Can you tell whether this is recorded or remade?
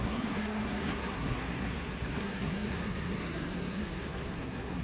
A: remade